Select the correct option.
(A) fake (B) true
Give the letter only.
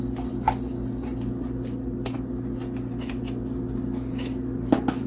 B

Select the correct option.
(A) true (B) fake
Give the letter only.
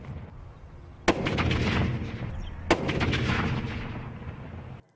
A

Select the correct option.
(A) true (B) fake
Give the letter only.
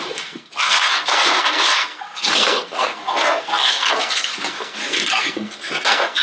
B